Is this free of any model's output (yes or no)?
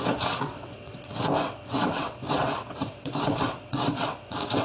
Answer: no